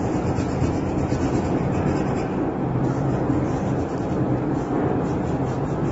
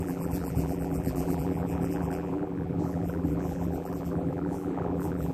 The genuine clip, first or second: first